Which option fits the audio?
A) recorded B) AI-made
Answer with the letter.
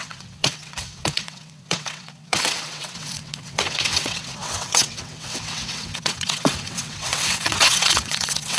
B